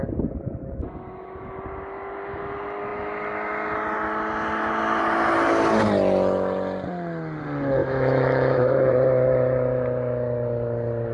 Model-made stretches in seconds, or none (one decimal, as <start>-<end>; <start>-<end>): 7.8-8.9